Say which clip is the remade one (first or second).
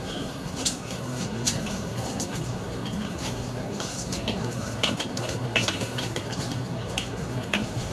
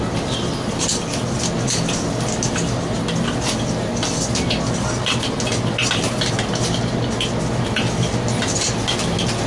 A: first